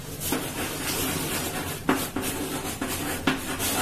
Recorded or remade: recorded